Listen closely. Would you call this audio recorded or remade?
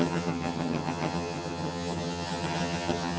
remade